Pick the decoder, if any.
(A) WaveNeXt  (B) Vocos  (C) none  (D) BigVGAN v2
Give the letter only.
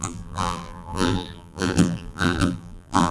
D